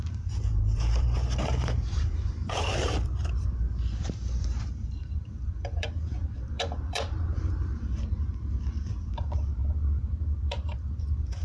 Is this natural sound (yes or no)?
no